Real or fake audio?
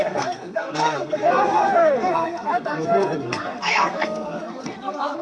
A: fake